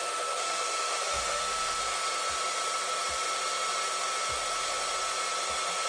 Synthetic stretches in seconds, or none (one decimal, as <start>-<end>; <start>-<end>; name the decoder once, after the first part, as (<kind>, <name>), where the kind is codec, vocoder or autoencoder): 0.0-1.8 (autoencoder, DAC-VAE)

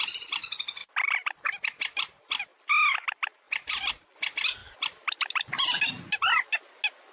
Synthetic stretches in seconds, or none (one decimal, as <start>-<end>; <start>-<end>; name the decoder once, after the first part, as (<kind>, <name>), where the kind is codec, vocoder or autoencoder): none

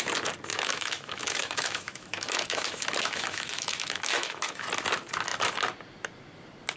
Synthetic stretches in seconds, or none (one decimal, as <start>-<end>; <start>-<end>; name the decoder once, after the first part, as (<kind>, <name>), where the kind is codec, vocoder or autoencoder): 0.5-4.6 (autoencoder, DAC-VAE)

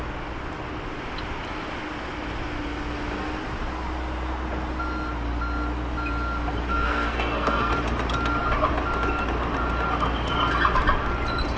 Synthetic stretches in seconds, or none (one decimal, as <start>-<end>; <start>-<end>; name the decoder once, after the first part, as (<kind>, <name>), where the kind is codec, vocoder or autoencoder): 6.7-7.7 (codec, SNAC)

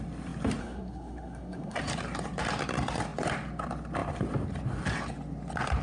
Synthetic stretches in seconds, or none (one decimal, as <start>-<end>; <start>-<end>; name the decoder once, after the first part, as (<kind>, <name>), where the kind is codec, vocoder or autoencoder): 0.6-1.8 (codec, SNAC)

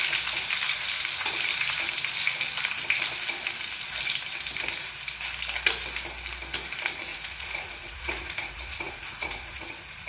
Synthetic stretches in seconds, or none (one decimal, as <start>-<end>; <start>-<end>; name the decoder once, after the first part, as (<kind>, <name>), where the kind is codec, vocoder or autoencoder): 7.1-10.1 (vocoder, Vocos)